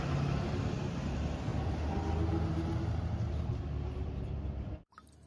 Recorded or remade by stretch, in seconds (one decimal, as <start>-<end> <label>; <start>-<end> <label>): 0.0-5.3 recorded